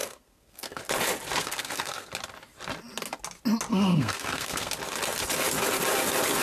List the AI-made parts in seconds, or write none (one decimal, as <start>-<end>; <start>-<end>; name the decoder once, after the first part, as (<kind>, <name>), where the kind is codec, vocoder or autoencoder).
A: 0.0-0.8 (codec, SNAC); 1.4-2.1; 3.7-4.7